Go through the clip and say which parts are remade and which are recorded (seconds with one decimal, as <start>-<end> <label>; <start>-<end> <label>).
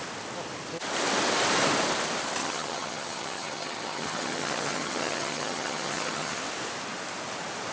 0.0-2.4 recorded; 2.4-6.4 remade; 6.4-7.7 recorded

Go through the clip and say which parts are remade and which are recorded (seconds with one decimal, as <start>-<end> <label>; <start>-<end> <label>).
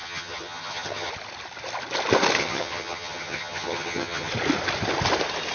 0.0-1.1 remade; 1.1-2.4 recorded; 2.4-4.3 remade; 4.3-5.5 recorded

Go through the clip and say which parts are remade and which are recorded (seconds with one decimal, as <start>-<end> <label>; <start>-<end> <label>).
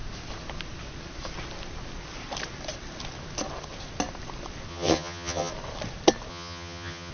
0.0-4.7 recorded; 4.7-5.5 remade; 5.5-6.3 recorded; 6.3-7.1 remade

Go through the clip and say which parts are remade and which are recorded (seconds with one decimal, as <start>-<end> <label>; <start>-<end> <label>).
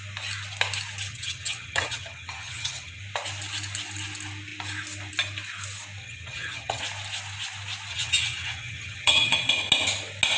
0.0-1.1 recorded; 1.1-3.0 remade; 3.0-6.0 recorded; 6.0-6.8 remade; 6.8-7.9 recorded; 7.9-9.5 remade; 9.5-10.4 recorded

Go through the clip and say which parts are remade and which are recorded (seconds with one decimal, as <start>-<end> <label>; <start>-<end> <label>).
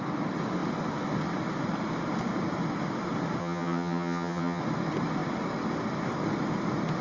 0.0-3.4 recorded; 3.4-4.6 remade; 4.6-7.0 recorded